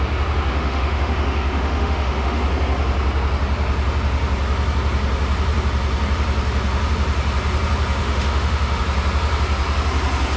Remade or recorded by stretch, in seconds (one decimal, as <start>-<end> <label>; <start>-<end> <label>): 0.0-0.5 recorded; 0.5-2.4 remade; 2.4-8.0 recorded; 8.0-8.8 remade; 8.8-10.4 recorded